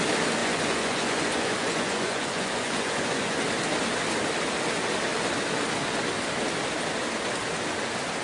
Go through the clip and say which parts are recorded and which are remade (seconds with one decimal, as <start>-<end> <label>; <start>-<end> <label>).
0.0-0.4 recorded; 0.4-3.4 remade; 3.4-8.2 recorded

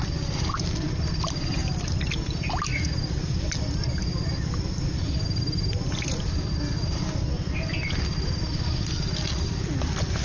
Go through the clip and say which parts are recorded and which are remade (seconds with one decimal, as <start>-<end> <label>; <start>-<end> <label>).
0.0-10.2 recorded

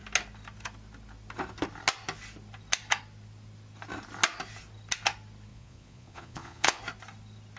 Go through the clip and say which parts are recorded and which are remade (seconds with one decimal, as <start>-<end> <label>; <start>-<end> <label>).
0.0-5.5 recorded; 5.5-6.8 remade; 6.8-7.6 recorded

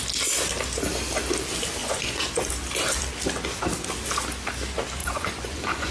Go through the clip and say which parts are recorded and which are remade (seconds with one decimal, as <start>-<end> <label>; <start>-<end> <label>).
0.0-1.8 recorded; 1.8-2.5 remade; 2.5-5.0 recorded; 5.0-5.9 remade

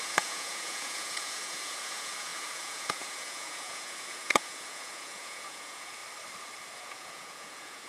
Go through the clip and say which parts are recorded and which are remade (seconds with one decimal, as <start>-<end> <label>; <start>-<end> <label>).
0.0-6.0 remade; 6.0-6.8 recorded; 6.8-7.9 remade